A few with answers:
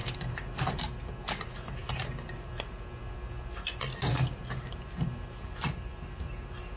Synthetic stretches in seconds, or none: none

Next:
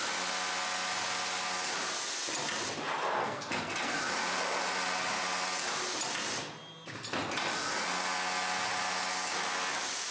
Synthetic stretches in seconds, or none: 3.2-4.0